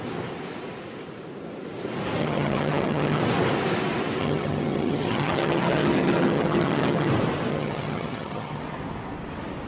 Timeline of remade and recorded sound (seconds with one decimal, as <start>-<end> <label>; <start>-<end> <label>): 0.0-2.2 recorded; 2.2-3.2 remade; 3.2-4.2 recorded; 4.2-7.1 remade; 7.1-7.5 recorded; 7.5-8.6 remade; 8.6-9.7 recorded